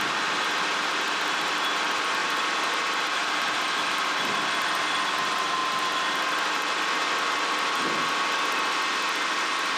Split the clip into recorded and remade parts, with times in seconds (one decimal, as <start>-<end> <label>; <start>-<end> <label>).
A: 0.0-9.8 recorded

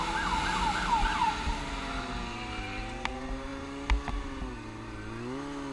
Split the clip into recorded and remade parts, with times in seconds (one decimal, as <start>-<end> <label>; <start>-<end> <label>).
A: 0.0-5.7 recorded